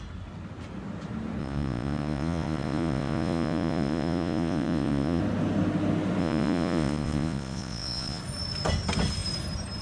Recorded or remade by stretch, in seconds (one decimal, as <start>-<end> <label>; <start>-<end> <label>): 0.0-1.4 recorded; 1.4-5.2 remade; 5.2-6.2 recorded; 6.2-8.2 remade; 8.2-9.8 recorded